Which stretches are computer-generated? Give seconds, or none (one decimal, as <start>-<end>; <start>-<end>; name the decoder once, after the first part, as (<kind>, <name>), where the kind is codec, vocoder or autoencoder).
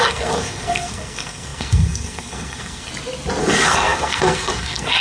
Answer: 0.0-2.9 (codec, SNAC); 3.4-5.0